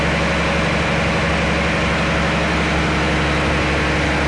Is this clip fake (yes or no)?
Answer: no